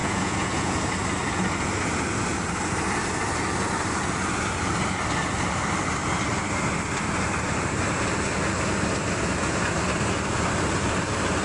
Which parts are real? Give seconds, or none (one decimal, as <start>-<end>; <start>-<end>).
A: 0.8-11.4